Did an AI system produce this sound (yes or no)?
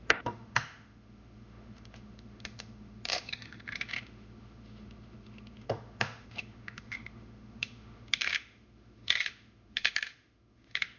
yes